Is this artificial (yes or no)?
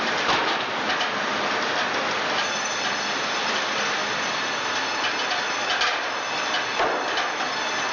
no